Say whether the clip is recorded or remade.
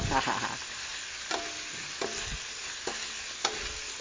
recorded